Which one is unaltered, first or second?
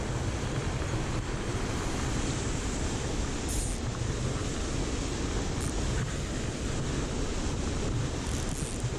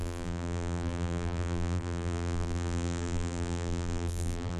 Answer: first